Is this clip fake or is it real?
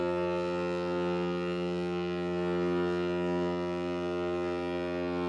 real